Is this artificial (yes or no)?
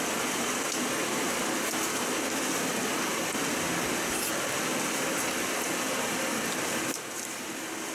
no